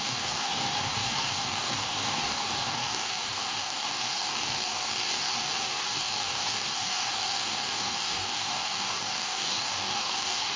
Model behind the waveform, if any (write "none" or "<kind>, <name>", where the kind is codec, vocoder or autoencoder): codec, DAC